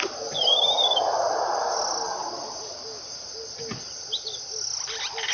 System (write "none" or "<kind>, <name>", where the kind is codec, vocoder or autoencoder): none